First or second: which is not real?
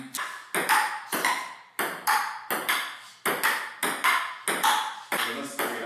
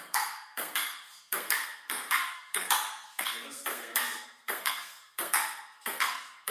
second